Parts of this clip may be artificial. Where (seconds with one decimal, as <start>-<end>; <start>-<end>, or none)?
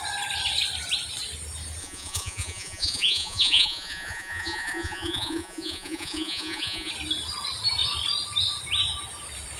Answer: 1.8-6.9